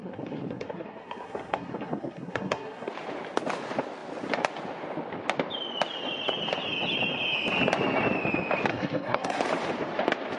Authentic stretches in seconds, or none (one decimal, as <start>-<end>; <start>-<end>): 2.9-8.7; 9.4-10.4